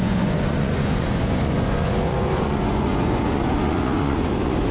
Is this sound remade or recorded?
remade